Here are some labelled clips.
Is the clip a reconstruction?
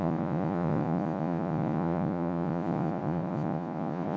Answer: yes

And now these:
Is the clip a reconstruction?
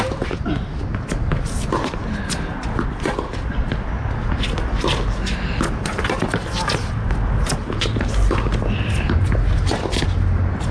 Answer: no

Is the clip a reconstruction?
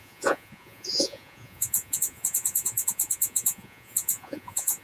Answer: yes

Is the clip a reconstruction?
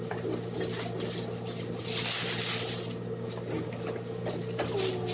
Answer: no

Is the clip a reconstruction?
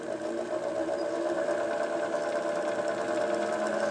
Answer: no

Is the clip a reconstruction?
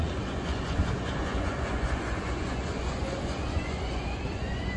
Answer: yes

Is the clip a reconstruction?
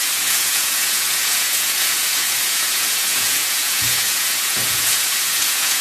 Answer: yes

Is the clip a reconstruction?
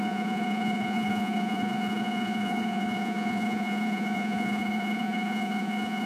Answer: yes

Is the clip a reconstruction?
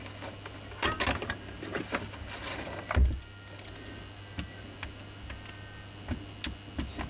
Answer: no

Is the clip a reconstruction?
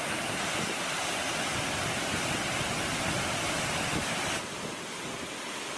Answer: no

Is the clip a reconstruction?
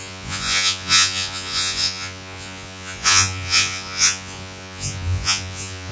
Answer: yes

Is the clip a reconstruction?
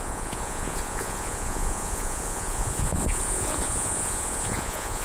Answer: yes